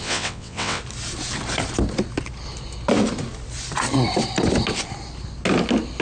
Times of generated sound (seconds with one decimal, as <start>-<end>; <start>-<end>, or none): 0.0-0.8